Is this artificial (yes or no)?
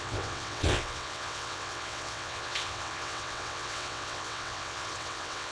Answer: yes